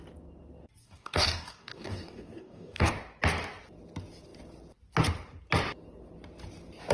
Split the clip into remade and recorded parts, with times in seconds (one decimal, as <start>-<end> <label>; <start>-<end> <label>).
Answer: 0.0-0.8 recorded; 0.8-2.9 remade; 2.9-6.9 recorded